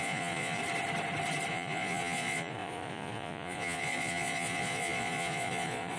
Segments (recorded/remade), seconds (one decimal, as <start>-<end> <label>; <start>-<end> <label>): 0.0-0.6 remade; 0.6-1.5 recorded; 1.5-6.0 remade

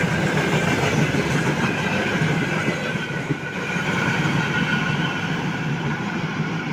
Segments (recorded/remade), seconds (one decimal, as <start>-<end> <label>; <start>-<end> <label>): 0.0-2.6 recorded; 2.6-6.7 remade